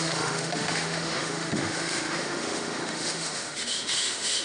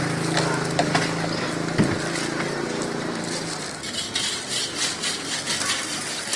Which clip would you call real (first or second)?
second